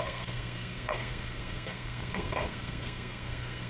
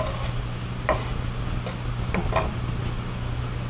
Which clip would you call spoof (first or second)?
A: first